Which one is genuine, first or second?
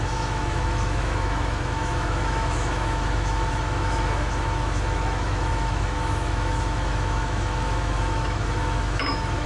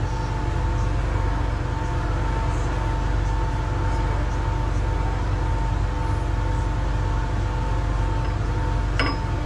second